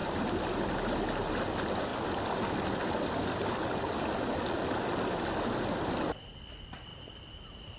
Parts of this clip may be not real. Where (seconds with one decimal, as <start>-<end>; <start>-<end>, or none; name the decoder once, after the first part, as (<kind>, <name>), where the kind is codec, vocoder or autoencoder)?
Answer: none